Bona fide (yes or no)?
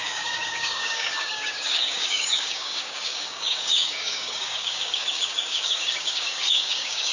no